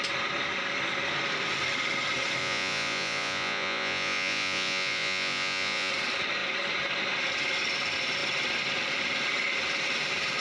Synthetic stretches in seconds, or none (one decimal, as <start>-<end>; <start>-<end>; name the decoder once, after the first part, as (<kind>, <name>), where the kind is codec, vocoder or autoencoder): 2.4-5.9 (vocoder, Vocos)